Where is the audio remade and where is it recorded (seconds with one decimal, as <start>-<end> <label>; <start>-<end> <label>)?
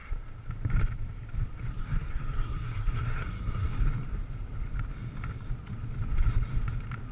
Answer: 0.0-1.8 recorded; 1.8-3.7 remade; 3.7-7.1 recorded